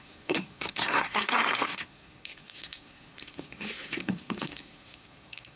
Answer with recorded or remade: remade